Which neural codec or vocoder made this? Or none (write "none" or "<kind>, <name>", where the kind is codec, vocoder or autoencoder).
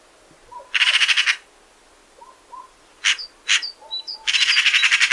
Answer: none